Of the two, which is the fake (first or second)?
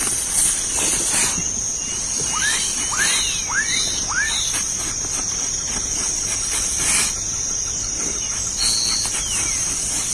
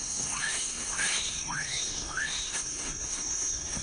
second